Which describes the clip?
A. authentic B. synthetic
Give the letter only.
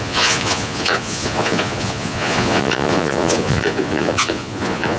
B